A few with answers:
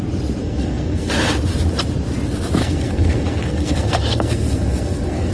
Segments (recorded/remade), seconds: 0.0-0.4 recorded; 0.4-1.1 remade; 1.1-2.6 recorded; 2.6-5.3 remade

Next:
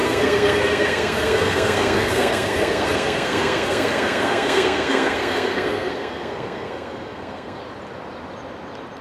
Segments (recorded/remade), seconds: 0.0-7.6 remade; 7.6-9.0 recorded

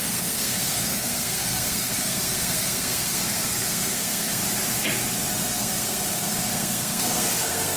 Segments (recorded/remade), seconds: 0.0-4.4 remade; 4.4-5.3 recorded; 5.3-7.8 remade

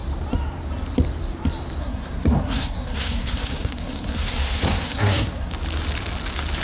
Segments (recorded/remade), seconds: 0.0-1.8 recorded; 1.8-5.5 remade; 5.5-6.6 recorded

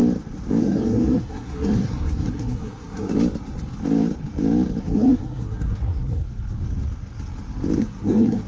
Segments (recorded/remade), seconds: 0.0-0.6 recorded; 0.6-3.1 remade; 3.1-4.8 recorded; 4.8-6.2 remade; 6.2-7.8 recorded; 7.8-8.5 remade

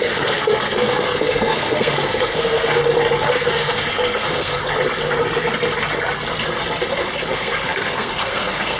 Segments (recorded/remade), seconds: 0.0-2.8 remade; 2.8-3.3 recorded; 3.3-4.6 remade; 4.6-7.3 recorded; 7.3-8.8 remade